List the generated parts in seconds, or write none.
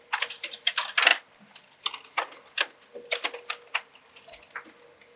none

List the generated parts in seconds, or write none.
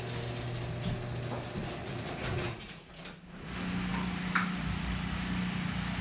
1.8-2.9 (vocoder, Vocos)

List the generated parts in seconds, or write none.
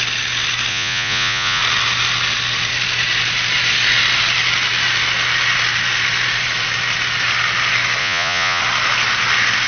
0.7-1.6 (vocoder, Vocos); 8.0-8.6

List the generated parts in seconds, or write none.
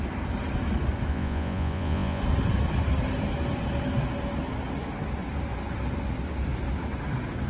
1.1-2.2 (vocoder, Vocos)